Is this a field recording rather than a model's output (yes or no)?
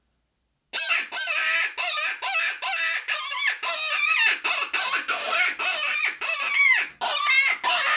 yes